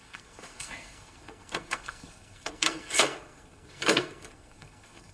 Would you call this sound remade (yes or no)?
yes